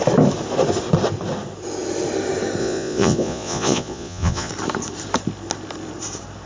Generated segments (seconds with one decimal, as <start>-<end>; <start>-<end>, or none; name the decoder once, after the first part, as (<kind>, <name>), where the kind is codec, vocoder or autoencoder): 2.6-4.5 (vocoder, Vocos)